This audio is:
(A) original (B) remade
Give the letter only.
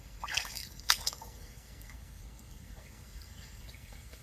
B